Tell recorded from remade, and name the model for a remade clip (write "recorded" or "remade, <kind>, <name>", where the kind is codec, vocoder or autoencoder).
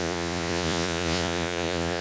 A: remade, vocoder, Vocos